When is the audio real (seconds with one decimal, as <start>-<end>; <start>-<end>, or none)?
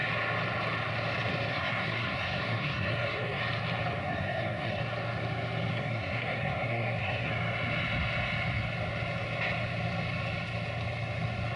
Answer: 0.0-1.5; 3.4-4.0; 4.8-5.7; 7.3-11.6